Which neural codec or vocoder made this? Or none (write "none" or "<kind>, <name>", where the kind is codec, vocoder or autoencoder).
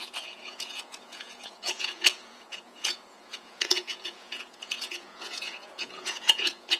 vocoder, Vocos